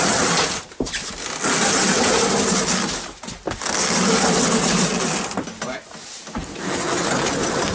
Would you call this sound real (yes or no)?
yes